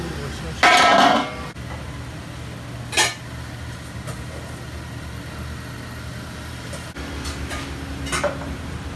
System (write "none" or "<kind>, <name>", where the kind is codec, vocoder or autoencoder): none